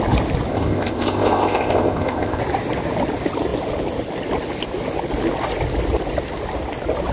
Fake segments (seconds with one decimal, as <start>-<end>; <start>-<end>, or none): 0.5-2.4